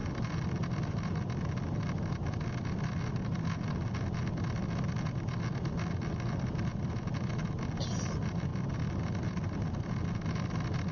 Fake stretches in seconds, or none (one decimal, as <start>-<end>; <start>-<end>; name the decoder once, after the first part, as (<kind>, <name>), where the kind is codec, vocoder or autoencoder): 0.0-0.8 (vocoder, BigVGAN v2)